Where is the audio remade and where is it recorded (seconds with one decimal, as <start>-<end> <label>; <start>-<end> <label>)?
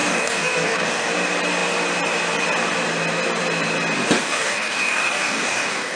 0.0-1.1 remade; 1.1-4.2 recorded; 4.2-6.0 remade